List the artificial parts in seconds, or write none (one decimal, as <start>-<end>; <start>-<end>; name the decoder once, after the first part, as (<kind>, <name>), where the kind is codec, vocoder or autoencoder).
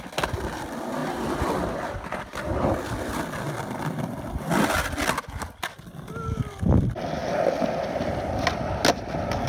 none